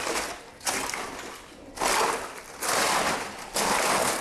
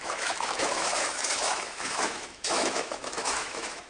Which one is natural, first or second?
first